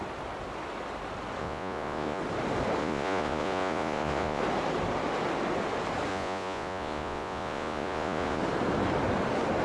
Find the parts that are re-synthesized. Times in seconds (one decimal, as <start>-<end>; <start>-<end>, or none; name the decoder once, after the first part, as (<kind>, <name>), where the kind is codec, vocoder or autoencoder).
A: 1.4-2.2 (vocoder, Vocos); 2.8-4.4; 6.1-8.4